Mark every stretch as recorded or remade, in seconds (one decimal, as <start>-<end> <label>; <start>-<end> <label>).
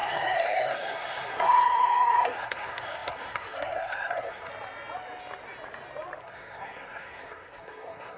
0.0-4.5 remade; 4.5-6.2 recorded; 6.2-8.2 remade